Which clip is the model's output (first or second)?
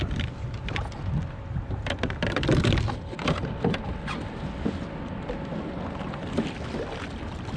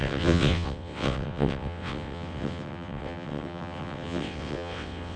second